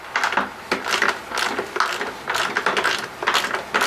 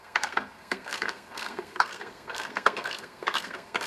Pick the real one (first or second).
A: first